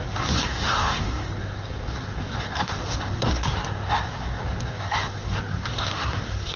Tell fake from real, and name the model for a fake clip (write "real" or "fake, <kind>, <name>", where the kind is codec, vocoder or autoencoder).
fake, codec, SNAC